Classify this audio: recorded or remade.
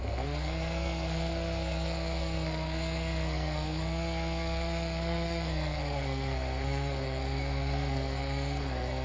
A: remade